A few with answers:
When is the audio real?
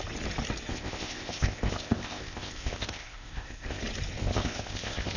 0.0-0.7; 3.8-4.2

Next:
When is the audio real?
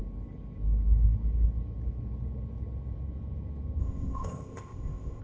0.0-3.8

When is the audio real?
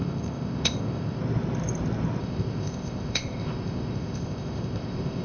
1.2-2.2